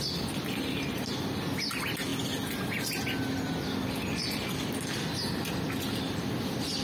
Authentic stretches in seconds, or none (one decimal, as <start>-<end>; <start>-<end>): 0.0-6.8